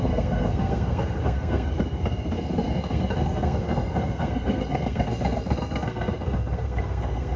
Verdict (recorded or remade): remade